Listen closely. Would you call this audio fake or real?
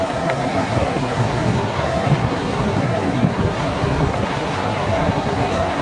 fake